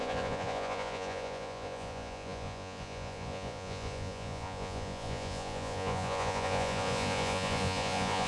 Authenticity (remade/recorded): remade